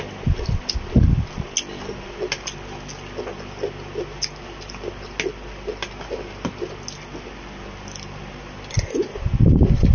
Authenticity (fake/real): real